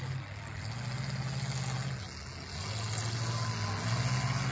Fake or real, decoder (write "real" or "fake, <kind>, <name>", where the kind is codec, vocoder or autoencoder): real